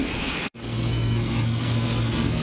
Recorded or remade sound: remade